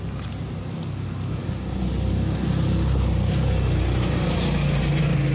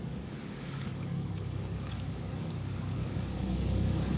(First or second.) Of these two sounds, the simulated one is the second